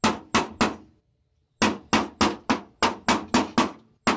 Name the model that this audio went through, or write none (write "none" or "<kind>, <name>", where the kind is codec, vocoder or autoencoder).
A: none